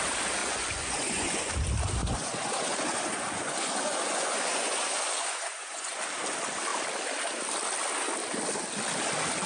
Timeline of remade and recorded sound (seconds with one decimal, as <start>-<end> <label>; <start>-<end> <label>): 0.0-0.4 recorded; 0.4-1.5 remade; 1.5-2.0 recorded; 2.0-6.0 remade; 6.0-9.5 recorded